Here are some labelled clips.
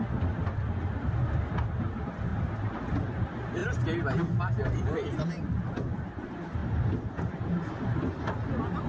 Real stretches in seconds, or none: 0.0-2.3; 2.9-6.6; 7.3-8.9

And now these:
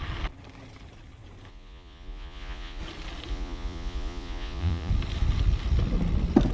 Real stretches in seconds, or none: 0.0-1.5; 2.8-3.3; 4.9-6.5

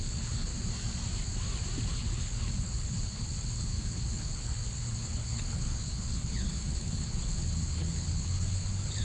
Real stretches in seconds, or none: 0.5-1.9

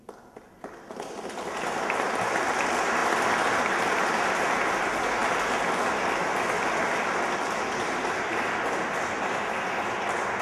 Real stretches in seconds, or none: 0.0-10.4

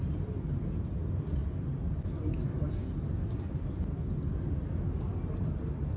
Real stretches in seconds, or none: 0.0-6.0

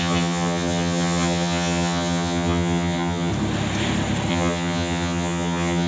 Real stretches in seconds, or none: 3.3-4.3